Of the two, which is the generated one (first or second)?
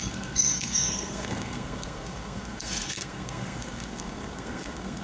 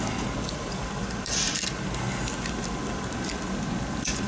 first